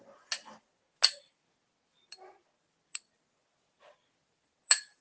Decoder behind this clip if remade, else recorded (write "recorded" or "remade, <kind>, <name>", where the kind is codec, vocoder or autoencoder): recorded